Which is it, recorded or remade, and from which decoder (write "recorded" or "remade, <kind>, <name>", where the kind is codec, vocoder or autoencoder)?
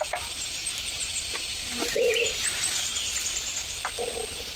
recorded